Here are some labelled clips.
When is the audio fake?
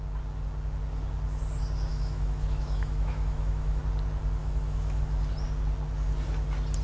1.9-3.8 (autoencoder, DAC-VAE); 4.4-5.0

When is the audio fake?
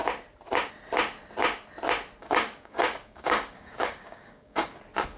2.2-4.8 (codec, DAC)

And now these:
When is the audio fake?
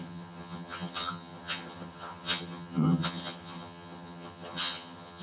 0.0-5.2 (vocoder, HiFi-GAN)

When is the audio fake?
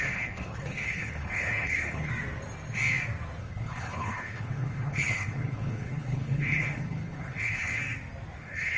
0.0-2.1 (codec, HILCodec); 3.4-7.8; 8.4-8.8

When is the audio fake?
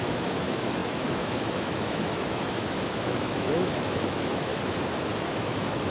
0.0-4.5 (autoencoder, DAC-VAE); 5.3-5.9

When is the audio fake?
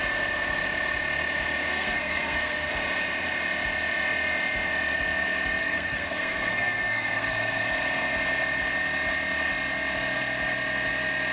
1.7-2.7 (codec, SNAC); 5.6-7.6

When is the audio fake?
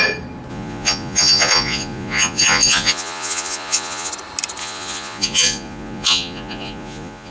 0.5-4.1 (vocoder, Vocos); 4.6-7.3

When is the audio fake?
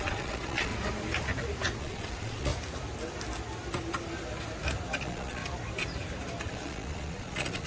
0.0-0.7 (vocoder, Vocos); 1.8-2.5; 5.0-5.4; 6.4-7.7